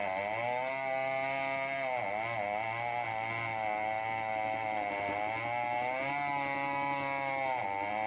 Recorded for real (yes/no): yes